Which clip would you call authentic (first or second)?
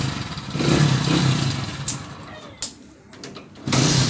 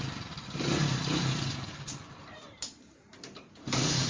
first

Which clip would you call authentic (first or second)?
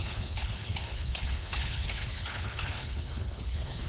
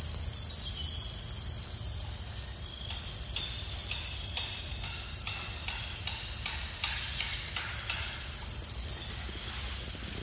second